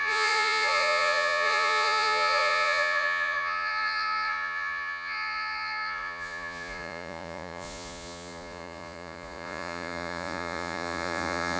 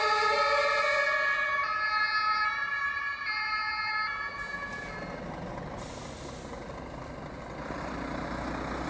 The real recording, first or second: second